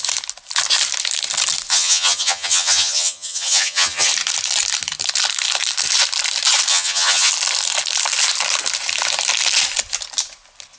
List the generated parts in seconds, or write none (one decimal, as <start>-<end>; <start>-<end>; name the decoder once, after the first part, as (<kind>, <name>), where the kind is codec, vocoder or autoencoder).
1.7-4.1 (vocoder, HiFi-GAN); 6.7-7.3